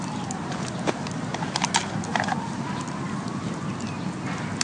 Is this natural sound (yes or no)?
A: yes